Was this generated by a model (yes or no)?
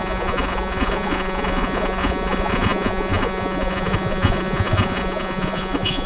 yes